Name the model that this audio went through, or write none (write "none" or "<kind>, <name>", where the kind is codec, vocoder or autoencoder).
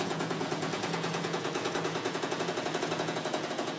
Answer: vocoder, Vocos